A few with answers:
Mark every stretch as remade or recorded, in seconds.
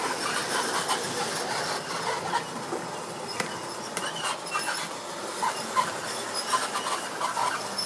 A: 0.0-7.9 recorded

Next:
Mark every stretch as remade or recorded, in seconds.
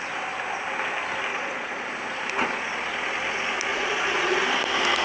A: 0.0-1.3 recorded; 1.3-1.9 remade; 1.9-3.7 recorded; 3.7-4.4 remade; 4.4-5.0 recorded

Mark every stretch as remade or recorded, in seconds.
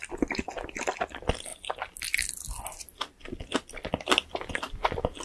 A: 0.0-5.2 recorded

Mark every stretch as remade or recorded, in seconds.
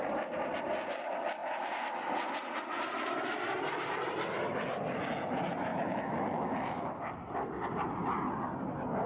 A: 0.0-5.7 recorded; 5.7-7.0 remade; 7.0-9.1 recorded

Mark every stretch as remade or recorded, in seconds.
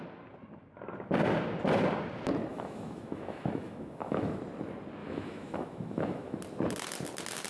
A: 0.0-2.5 recorded; 2.5-4.4 remade; 4.4-5.0 recorded; 5.0-6.4 remade; 6.4-7.5 recorded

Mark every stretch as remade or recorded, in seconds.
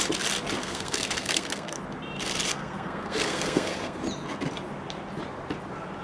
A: 0.0-0.6 recorded; 0.6-1.8 remade; 1.8-2.5 recorded; 2.5-4.0 remade; 4.0-6.0 recorded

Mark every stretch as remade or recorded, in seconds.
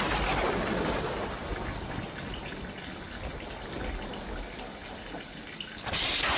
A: 0.0-6.4 recorded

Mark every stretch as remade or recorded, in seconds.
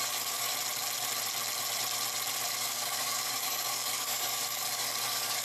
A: 0.0-0.5 remade; 0.5-2.5 recorded; 2.5-5.4 remade